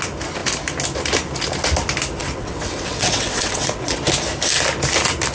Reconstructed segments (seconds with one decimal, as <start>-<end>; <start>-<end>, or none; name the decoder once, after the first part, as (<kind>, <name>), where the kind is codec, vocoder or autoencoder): 2.2-4.0 (vocoder, WaveNeXt)

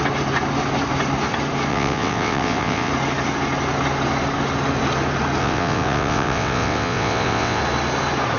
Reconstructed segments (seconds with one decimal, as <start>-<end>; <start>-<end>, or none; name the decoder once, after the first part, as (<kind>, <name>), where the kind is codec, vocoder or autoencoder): 1.7-2.9 (vocoder, WaveNeXt); 5.4-7.6